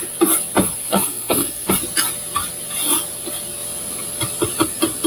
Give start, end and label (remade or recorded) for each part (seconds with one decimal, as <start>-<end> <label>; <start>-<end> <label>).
0.0-0.8 recorded; 0.8-1.7 remade; 1.7-5.1 recorded